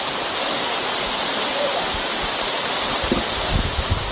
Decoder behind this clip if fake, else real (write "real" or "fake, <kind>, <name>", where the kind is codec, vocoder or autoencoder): real